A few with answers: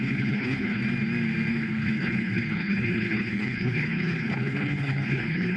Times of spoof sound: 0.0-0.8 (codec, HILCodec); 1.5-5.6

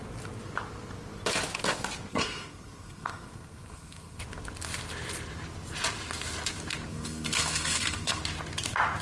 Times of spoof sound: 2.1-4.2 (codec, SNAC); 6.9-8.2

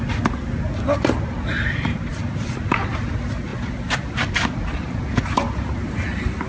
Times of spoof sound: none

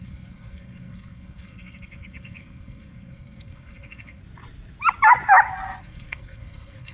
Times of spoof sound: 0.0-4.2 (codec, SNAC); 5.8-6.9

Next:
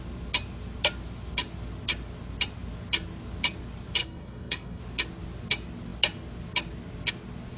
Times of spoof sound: 4.0-4.8 (codec, SNAC)

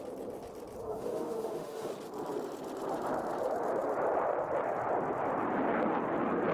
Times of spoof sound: 0.8-1.9 (autoencoder, DAC-VAE)

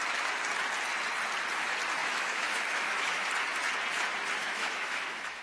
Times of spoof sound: 2.0-3.3 (autoencoder, DAC-VAE); 4.4-5.4